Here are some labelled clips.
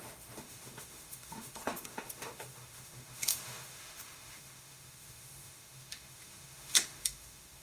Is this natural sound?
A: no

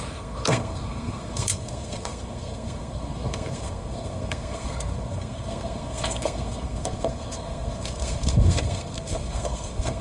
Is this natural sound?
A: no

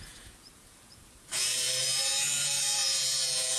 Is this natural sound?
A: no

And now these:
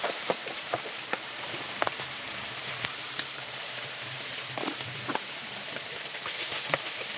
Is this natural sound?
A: no